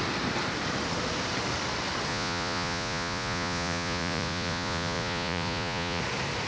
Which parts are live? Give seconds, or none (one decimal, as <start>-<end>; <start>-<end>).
0.0-2.1; 6.0-6.5